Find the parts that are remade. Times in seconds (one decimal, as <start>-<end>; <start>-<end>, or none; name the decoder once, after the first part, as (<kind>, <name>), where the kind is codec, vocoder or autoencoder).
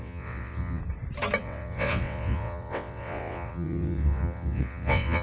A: 0.0-0.8 (vocoder, WaveNeXt); 1.4-5.2